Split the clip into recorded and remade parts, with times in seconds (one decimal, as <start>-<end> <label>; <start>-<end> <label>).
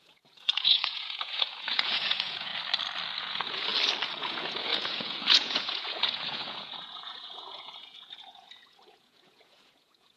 0.0-2.5 remade; 2.5-3.2 recorded; 3.2-3.7 remade; 3.7-4.2 recorded; 4.2-10.2 remade